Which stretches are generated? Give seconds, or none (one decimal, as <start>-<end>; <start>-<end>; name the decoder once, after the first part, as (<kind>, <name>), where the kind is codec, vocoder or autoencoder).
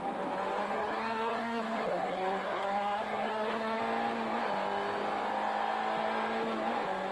0.6-3.8 (codec, SNAC)